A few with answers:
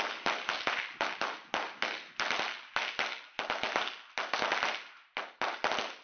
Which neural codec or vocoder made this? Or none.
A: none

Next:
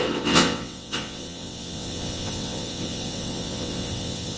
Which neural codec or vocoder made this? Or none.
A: vocoder, WaveNeXt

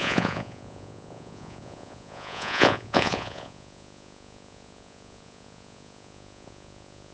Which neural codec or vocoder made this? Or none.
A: vocoder, Vocos